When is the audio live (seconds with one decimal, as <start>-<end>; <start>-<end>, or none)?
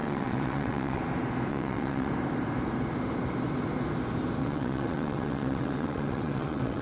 1.0-1.5; 2.1-4.4